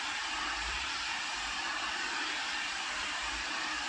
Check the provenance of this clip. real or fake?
fake